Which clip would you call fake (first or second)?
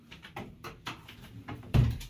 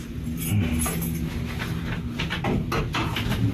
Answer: first